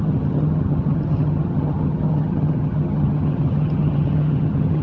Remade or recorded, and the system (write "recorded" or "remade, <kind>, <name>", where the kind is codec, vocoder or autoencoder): remade, vocoder, HiFi-GAN